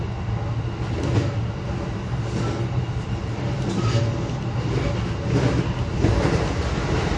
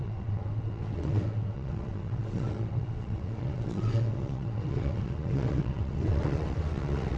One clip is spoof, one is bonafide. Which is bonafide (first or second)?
first